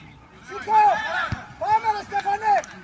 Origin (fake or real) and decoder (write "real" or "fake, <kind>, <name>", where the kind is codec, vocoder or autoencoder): real